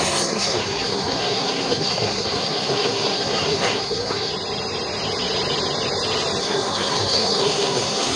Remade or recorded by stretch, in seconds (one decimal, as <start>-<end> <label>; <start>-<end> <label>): 0.0-4.3 remade; 4.3-6.4 recorded; 6.4-8.2 remade